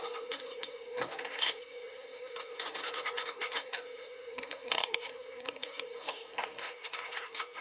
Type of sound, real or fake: fake